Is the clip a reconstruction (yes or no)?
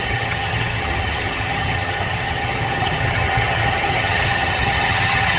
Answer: yes